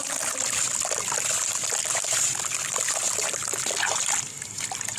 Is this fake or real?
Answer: real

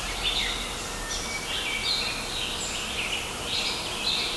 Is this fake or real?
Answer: real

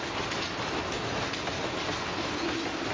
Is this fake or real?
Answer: real